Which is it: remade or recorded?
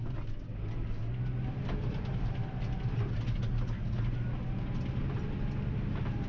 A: recorded